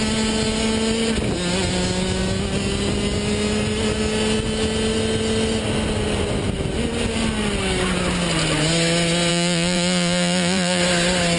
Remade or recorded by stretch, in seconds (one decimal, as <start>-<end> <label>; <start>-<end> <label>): 0.0-9.3 recorded; 9.3-10.8 remade; 10.8-11.4 recorded